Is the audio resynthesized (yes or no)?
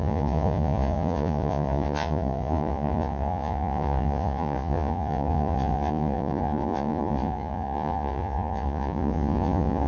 yes